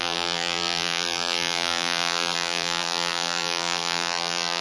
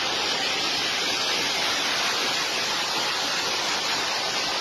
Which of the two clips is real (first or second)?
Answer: second